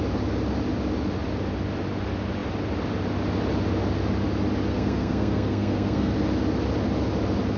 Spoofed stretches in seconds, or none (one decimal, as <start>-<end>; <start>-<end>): 4.7-6.1